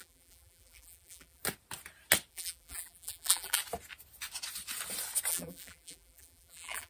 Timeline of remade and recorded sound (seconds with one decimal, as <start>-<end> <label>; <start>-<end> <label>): 0.0-1.4 remade; 1.4-2.3 recorded; 2.3-3.6 remade; 3.6-5.3 recorded; 5.3-6.9 remade